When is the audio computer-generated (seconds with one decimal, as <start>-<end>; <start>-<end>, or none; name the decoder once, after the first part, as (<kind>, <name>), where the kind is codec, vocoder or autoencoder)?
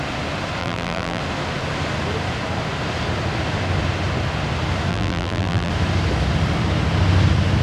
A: 0.6-1.2 (vocoder, BigVGAN v2); 4.9-5.7